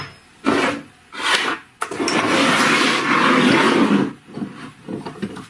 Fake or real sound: real